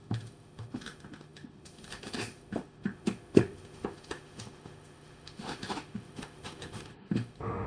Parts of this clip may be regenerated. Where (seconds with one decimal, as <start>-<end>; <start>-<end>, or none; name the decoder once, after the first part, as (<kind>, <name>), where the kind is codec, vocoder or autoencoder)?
0.0-7.7 (autoencoder, DAC-VAE)